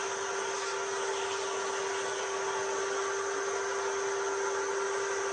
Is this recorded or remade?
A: recorded